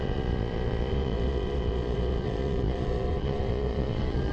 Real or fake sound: fake